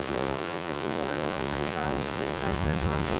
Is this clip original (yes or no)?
no